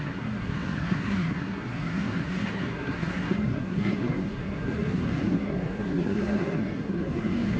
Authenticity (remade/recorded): remade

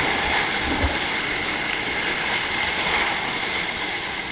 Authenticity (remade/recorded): recorded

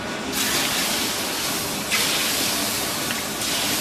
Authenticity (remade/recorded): recorded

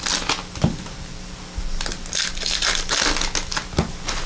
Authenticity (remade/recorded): recorded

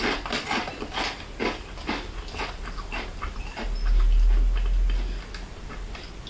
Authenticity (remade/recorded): recorded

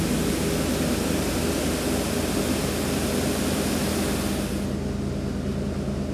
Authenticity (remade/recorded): recorded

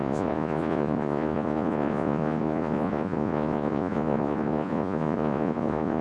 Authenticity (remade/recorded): remade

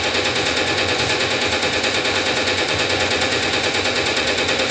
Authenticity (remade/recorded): remade